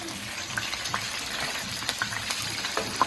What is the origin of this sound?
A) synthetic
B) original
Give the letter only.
A